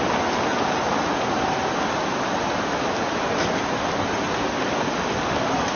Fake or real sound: real